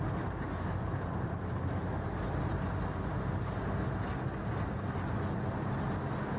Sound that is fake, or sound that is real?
real